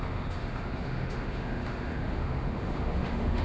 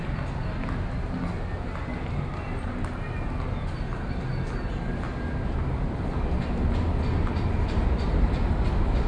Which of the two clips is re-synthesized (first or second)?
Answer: first